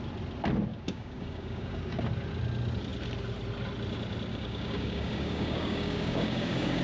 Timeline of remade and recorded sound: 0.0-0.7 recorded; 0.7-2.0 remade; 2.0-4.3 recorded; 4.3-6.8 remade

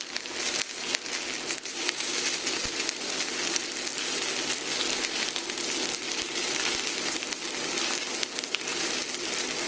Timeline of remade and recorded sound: 0.0-1.7 recorded; 1.7-2.2 remade; 2.2-9.7 recorded

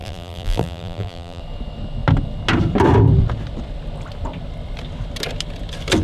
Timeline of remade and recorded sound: 0.0-1.4 remade; 1.4-6.0 recorded

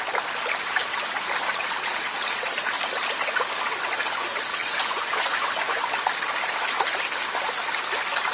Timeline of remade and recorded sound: 0.0-4.6 recorded; 4.6-5.8 remade; 5.8-8.3 recorded